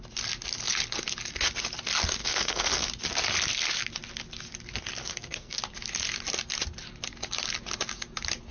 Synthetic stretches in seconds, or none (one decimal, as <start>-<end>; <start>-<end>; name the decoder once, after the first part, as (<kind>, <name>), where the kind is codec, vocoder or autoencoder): 2.2-2.9 (codec, SNAC); 5.0-5.6